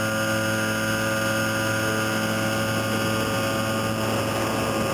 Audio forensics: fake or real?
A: real